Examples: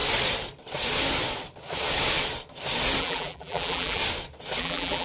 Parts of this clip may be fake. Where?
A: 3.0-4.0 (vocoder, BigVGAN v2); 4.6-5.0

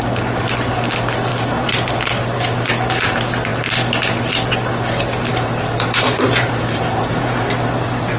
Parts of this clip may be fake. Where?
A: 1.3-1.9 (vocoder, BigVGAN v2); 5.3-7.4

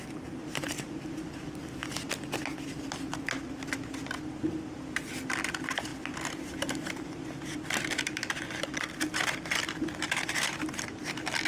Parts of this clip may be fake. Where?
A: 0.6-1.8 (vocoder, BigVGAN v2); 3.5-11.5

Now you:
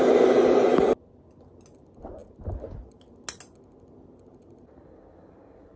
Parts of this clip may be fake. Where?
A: none

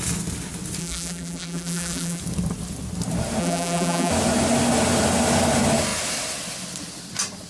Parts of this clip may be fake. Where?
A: 0.8-2.2 (vocoder, BigVGAN v2); 3.4-4.1

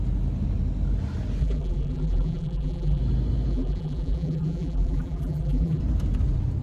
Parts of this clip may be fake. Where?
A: 1.4-3.0 (vocoder, BigVGAN v2); 3.5-5.8

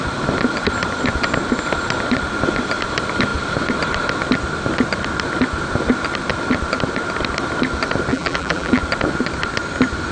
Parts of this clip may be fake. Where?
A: 8.1-8.8 (vocoder, BigVGAN v2)

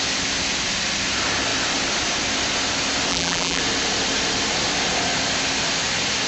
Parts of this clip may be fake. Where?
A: 3.1-3.6 (vocoder, BigVGAN v2)